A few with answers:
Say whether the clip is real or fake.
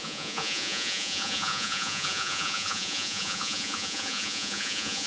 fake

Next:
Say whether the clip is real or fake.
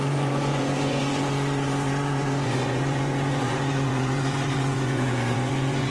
fake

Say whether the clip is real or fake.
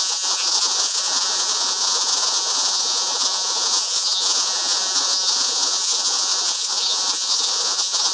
fake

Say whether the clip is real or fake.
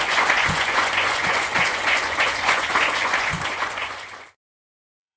fake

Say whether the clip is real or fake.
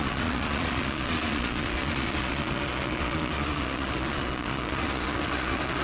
fake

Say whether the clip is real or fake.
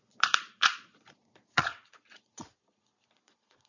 fake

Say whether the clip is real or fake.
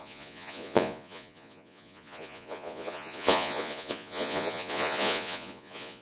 fake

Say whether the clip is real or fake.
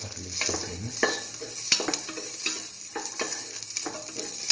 real